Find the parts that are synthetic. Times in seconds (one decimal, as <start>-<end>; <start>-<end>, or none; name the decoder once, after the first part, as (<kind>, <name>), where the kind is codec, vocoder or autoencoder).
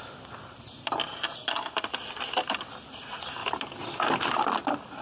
none